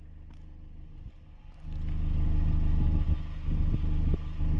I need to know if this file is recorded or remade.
recorded